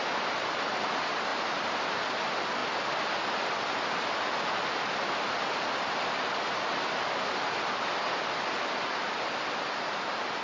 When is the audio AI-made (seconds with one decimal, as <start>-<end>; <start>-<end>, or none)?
1.3-2.0